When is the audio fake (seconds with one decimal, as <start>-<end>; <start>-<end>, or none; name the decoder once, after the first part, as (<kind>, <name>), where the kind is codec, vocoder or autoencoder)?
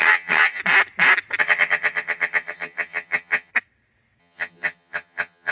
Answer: 0.0-0.6 (vocoder, HiFi-GAN); 1.4-3.5; 4.2-5.5